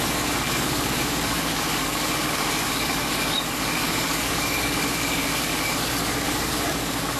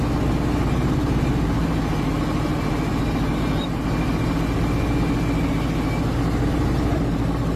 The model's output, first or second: first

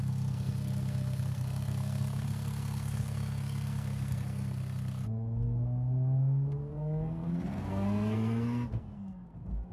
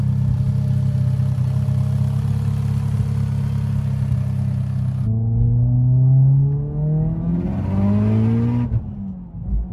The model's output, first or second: first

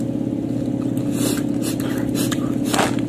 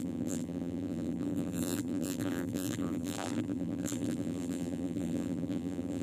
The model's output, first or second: second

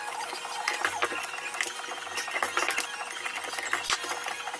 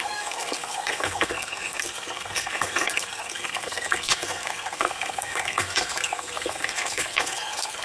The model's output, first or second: second